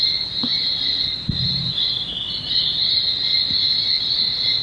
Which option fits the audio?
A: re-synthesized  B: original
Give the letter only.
B